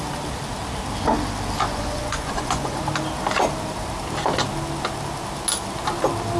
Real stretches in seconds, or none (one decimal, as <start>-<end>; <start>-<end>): 0.0-1.7; 2.8-6.4